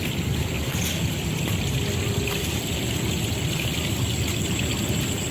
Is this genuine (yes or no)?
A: yes